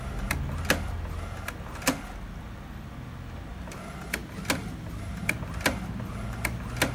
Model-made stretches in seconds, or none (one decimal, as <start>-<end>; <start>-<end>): none